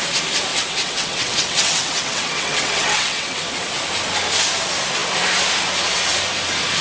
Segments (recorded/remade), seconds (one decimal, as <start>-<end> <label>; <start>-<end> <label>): 0.0-0.5 recorded; 0.5-3.4 remade; 3.4-6.8 recorded